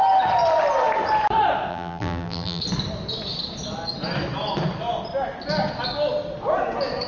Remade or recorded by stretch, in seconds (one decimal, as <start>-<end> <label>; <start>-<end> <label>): 0.0-1.7 recorded; 1.7-2.6 remade; 2.6-7.1 recorded